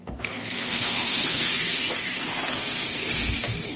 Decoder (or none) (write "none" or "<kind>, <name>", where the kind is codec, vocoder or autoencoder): codec, SNAC